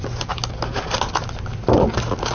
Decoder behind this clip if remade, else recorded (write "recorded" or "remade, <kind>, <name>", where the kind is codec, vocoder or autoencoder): recorded